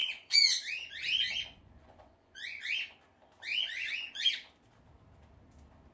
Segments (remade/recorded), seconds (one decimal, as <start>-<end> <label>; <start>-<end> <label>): 0.0-2.8 remade; 2.8-3.5 recorded; 3.5-4.3 remade; 4.3-5.9 recorded